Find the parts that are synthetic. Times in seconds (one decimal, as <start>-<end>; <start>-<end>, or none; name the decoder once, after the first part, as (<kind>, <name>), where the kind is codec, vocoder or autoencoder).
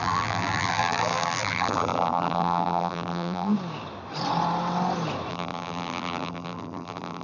0.0-3.5 (vocoder, BigVGAN v2); 5.3-7.2